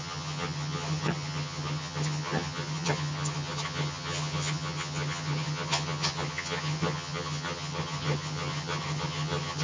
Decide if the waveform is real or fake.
fake